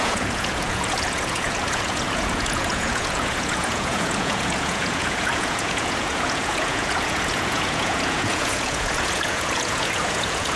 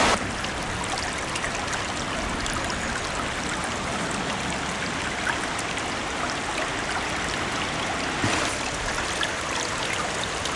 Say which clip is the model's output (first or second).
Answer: first